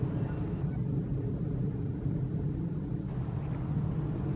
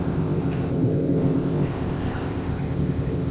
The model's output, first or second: second